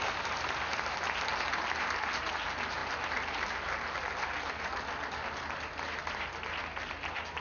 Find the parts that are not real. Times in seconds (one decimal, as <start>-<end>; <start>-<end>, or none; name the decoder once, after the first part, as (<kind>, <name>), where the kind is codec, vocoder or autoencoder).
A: none